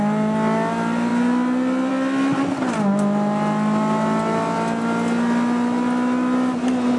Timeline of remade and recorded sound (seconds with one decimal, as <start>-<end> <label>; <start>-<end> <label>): 0.0-7.0 recorded